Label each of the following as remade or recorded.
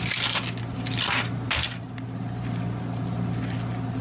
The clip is recorded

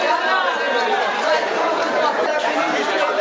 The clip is recorded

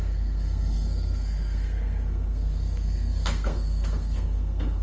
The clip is remade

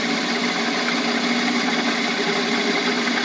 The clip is recorded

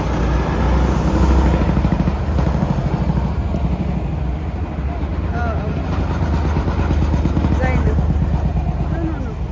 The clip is recorded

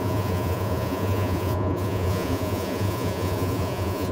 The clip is remade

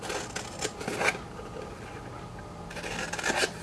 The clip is recorded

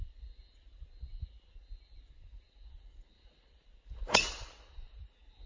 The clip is recorded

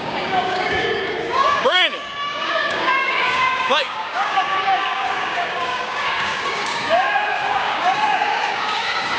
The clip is remade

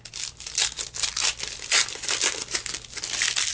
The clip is recorded